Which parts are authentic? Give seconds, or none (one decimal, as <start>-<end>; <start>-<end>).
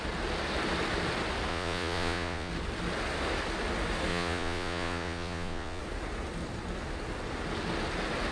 0.0-1.5; 2.5-4.1; 5.8-8.3